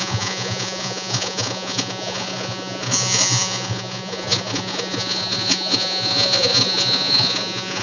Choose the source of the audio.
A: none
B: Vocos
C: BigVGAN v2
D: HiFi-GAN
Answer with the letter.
B